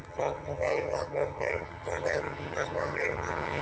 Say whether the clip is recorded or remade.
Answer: remade